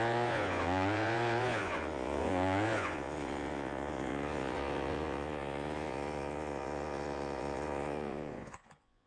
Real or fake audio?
fake